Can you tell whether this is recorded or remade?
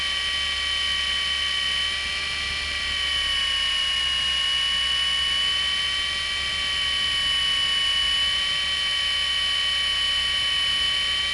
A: recorded